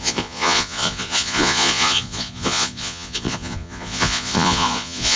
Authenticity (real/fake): fake